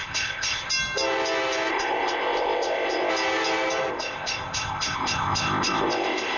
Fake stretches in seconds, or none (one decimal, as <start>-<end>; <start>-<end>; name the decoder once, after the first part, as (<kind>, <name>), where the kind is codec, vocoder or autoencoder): 0.0-0.7 (codec, ZipCodec); 1.7-3.1; 3.9-6.4